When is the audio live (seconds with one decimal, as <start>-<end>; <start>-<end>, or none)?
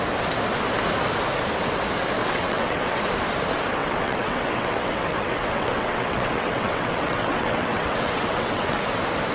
0.0-2.2; 3.0-3.8; 8.8-9.3